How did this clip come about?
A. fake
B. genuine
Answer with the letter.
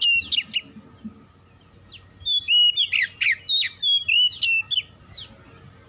B